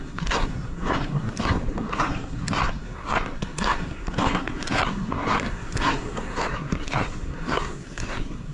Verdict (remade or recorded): remade